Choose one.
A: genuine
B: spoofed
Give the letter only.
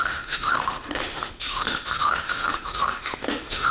B